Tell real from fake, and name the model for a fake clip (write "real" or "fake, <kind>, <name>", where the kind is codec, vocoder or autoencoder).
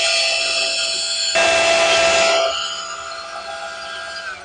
real